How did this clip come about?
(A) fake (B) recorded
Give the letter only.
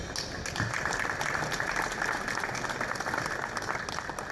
B